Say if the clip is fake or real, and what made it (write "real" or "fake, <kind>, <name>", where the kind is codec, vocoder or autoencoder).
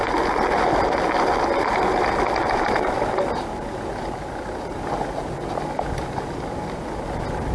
real